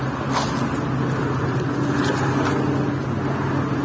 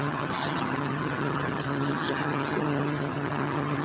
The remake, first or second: second